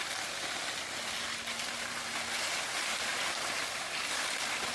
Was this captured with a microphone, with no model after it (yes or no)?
yes